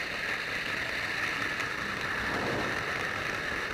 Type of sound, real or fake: real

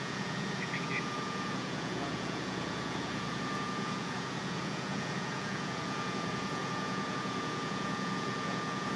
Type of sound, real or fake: fake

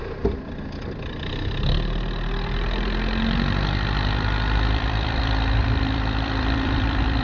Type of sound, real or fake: fake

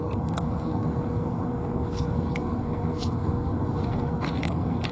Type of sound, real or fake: fake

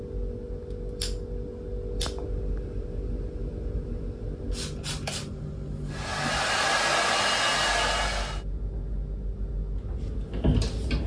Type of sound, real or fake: real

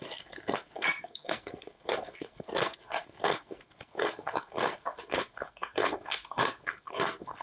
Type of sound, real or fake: fake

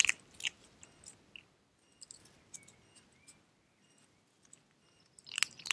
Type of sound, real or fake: real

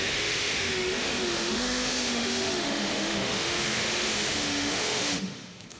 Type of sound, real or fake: fake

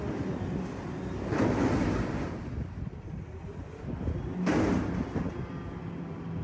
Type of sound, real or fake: real